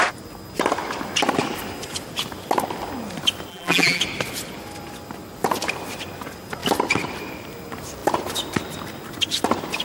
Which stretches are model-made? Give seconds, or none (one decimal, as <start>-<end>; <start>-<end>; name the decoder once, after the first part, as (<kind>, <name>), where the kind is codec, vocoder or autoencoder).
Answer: 3.5-4.0 (vocoder, BigVGAN v2)